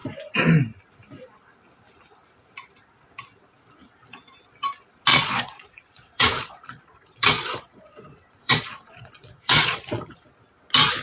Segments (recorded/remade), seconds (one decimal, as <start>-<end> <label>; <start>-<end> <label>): 0.0-5.1 recorded; 5.1-10.3 remade; 10.3-11.0 recorded